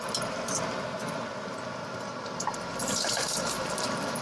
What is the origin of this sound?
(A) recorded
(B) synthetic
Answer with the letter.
B